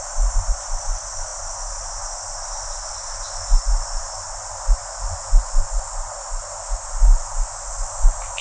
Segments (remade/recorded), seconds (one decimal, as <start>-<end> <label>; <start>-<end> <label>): 0.0-8.4 recorded

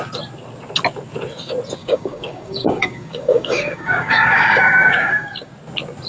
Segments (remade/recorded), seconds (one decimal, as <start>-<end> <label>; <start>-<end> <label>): 0.0-1.8 recorded; 1.8-5.5 remade; 5.5-6.1 recorded

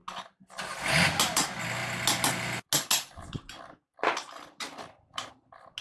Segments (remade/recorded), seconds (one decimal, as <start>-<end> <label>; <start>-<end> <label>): 0.0-5.8 recorded

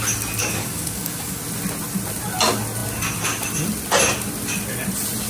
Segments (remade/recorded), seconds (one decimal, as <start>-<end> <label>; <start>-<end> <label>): 0.0-0.4 recorded; 0.4-1.4 remade; 1.4-5.3 recorded

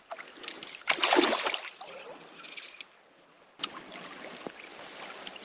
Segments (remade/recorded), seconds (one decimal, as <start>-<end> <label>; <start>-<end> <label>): 0.0-5.4 recorded